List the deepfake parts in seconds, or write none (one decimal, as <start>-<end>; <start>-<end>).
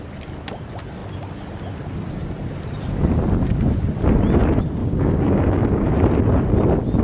4.8-5.9